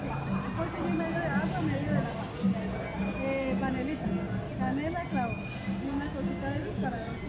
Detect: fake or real real